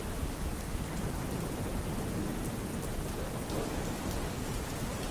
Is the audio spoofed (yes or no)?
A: no